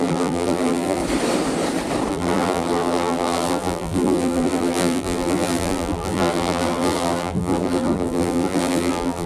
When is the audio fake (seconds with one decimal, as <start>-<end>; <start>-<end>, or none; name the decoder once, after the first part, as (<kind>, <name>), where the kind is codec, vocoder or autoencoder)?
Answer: 0.0-1.0 (vocoder, BigVGAN v2); 2.1-9.3

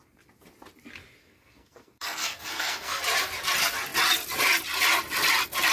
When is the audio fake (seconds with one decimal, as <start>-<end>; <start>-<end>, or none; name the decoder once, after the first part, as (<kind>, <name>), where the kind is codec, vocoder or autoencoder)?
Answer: 1.2-3.0 (codec, SNAC)

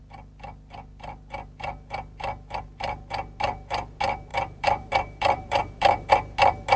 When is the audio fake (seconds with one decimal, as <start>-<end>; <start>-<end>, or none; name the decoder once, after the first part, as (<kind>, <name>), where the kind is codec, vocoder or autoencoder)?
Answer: 4.3-6.1 (vocoder, BigVGAN v2)

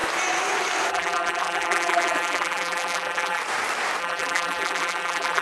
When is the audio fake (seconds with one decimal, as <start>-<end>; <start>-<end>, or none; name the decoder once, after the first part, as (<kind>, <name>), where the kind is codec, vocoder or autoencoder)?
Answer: 0.9-3.4 (vocoder, BigVGAN v2); 4.0-5.4

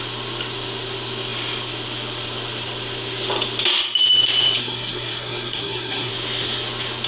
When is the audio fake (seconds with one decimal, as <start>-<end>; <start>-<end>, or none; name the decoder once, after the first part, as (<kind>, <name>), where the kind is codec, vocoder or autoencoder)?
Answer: 4.6-6.1 (codec, SNAC)